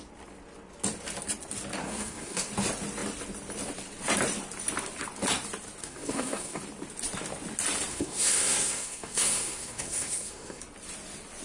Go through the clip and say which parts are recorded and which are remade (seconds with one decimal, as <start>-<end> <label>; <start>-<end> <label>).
0.0-1.8 recorded; 1.8-2.5 remade; 2.5-5.8 recorded; 5.8-6.6 remade; 6.6-7.9 recorded; 7.9-10.6 remade; 10.6-11.4 recorded